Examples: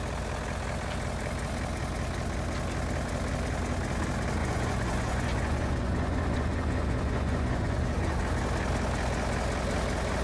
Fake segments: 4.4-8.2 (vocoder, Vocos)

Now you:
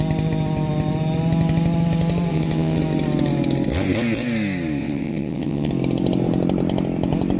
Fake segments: 2.3-2.8 (vocoder, WaveNeXt); 4.8-5.7

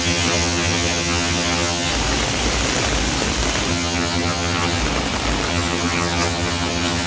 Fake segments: 0.0-1.9 (vocoder, HiFi-GAN); 3.7-4.8; 5.5-7.1

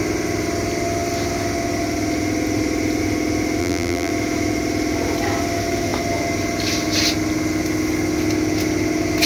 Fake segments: 3.6-4.1 (vocoder, BigVGAN v2)

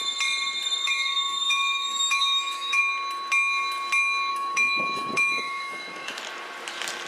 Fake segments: 0.8-2.8 (autoencoder, DAC-VAE); 4.3-6.2

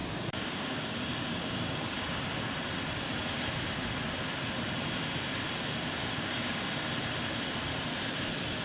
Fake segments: 0.0-2.2 (codec, DAC); 6.0-6.6

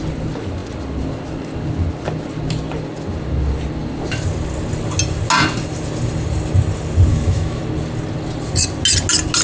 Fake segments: 7.1-7.6 (autoencoder, DAC-VAE)

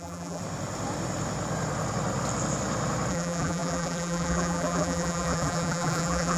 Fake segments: 0.0-0.4 (vocoder, BigVGAN v2); 3.1-6.4